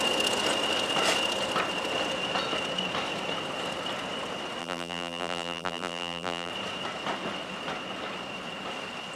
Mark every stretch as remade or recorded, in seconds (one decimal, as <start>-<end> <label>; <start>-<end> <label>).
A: 0.0-4.6 recorded; 4.6-6.5 remade; 6.5-9.2 recorded